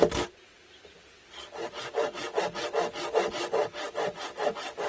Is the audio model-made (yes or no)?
no